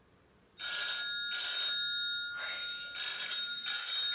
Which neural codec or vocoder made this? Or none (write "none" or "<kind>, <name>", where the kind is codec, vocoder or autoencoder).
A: none